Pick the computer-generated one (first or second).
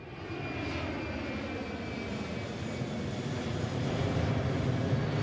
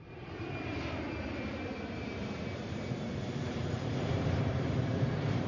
second